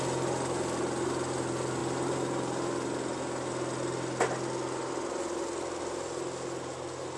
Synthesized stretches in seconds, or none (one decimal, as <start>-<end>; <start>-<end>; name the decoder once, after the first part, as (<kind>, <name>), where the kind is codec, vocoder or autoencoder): none